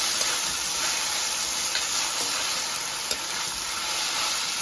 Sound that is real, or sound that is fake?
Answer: real